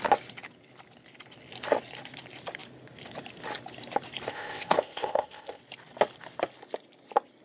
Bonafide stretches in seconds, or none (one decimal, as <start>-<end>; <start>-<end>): 0.0-4.3; 5.6-7.4